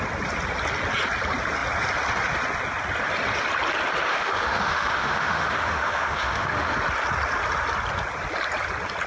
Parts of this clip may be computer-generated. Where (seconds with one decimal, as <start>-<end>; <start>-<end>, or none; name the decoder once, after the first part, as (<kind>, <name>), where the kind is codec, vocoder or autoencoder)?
4.1-6.7 (autoencoder, DAC-VAE)